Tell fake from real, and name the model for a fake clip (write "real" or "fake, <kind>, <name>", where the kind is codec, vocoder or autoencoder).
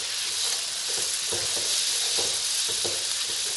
real